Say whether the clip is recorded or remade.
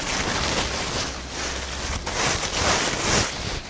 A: recorded